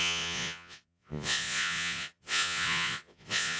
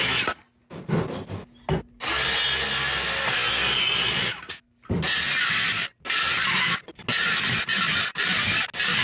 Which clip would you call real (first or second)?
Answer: second